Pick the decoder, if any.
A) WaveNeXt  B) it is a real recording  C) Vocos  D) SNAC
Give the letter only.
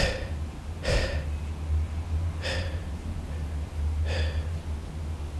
B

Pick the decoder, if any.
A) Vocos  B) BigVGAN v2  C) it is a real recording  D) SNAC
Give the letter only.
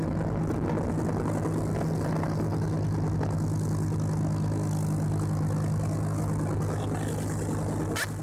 C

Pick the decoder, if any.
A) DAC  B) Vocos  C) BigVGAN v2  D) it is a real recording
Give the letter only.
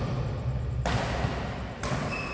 D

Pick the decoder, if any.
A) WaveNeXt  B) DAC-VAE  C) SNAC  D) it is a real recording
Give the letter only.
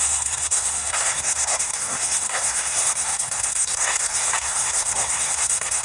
C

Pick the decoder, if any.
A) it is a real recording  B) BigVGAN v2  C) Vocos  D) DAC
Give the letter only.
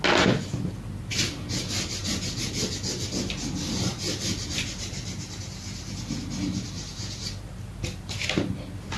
A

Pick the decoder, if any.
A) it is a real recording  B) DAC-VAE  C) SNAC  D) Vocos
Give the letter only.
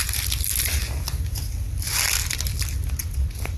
A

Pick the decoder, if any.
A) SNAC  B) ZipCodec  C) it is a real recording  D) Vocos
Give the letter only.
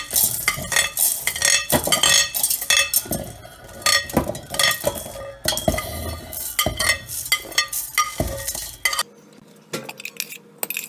C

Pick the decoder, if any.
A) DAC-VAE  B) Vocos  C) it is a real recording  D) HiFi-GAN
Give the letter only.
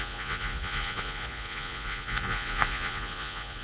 B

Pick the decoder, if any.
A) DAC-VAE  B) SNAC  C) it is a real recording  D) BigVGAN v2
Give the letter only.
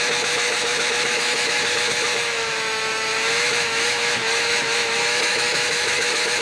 A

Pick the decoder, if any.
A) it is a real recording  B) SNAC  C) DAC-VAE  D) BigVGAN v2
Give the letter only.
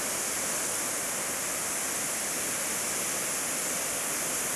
A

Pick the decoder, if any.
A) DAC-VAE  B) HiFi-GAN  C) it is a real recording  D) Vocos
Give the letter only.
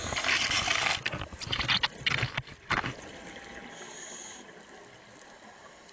C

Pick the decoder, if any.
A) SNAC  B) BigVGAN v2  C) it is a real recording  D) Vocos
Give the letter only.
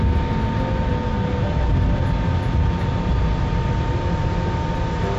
C